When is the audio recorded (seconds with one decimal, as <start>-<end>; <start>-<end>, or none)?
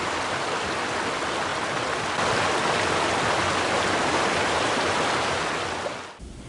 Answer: 0.0-6.5